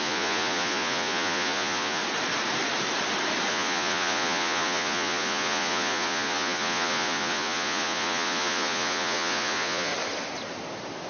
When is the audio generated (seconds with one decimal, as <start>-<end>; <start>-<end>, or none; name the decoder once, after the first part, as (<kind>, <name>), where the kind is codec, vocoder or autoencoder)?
0.0-2.0 (vocoder, Vocos); 3.5-9.9